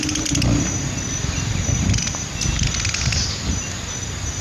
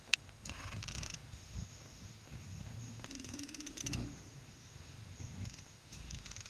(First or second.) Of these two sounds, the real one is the first